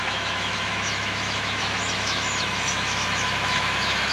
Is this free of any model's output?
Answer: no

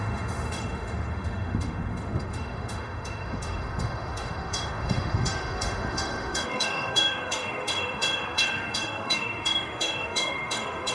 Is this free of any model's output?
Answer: no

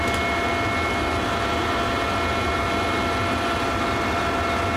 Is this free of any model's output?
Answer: yes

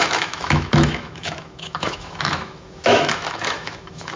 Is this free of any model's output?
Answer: no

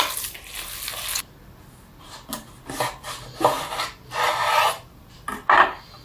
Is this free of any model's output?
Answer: yes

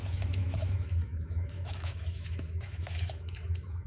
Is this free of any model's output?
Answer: no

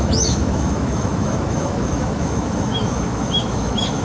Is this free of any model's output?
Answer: no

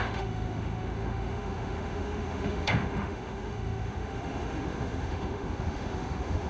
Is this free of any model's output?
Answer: no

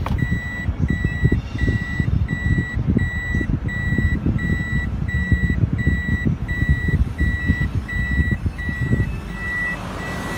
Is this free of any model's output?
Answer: yes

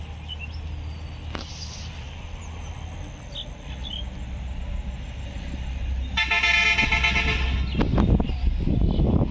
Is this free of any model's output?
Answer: yes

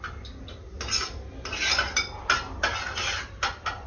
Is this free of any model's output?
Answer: yes